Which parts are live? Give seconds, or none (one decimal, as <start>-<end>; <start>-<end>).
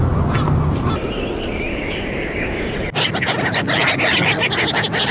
0.0-1.7; 2.7-5.1